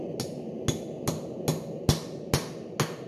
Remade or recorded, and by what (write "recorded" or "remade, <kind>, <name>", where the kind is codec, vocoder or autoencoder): recorded